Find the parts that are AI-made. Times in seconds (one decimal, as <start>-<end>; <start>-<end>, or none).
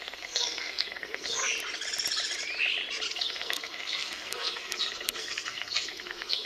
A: 0.0-1.4; 3.1-6.5